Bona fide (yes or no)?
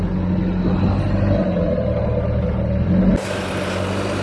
yes